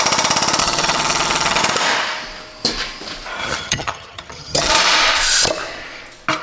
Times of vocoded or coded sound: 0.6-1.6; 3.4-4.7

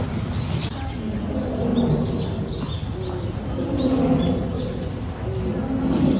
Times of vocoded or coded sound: none

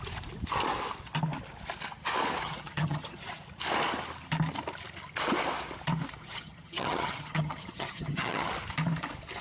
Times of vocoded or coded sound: 2.4-3.2; 6.2-8.5

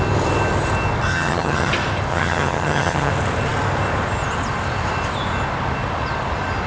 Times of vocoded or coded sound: 1.1-1.7; 2.1-3.1

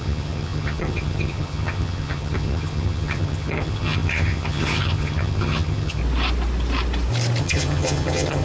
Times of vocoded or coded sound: 0.0-6.0; 7.4-8.4